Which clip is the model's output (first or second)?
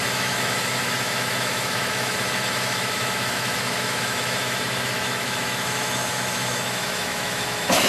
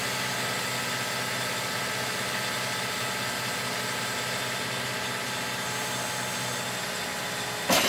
first